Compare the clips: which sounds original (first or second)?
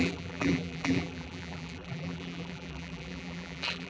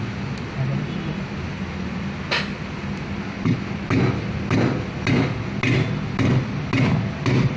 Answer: second